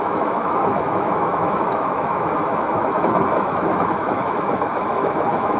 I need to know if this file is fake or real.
fake